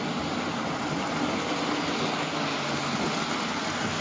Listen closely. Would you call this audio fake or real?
real